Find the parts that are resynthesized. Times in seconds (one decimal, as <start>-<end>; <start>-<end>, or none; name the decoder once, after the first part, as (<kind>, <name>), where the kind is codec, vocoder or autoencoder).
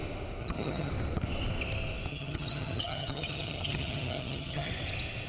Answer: 0.4-0.9 (vocoder, HiFi-GAN); 2.1-4.7